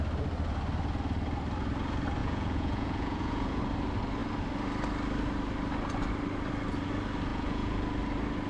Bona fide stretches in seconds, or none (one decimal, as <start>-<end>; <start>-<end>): 0.0-2.2; 3.6-7.3; 7.8-8.5